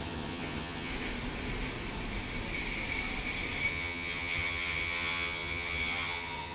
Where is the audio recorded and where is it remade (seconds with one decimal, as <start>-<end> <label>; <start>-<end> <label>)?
0.0-0.9 remade; 0.9-3.7 recorded; 3.7-6.5 remade